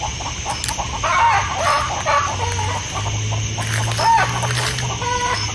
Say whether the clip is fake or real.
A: real